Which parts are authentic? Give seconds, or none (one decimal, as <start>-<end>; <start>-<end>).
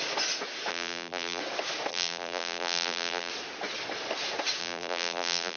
0.0-0.7; 1.4-1.9; 3.3-4.6